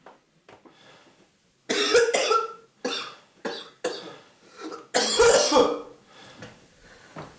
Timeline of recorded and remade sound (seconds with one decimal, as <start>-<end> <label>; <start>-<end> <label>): 0.0-7.4 recorded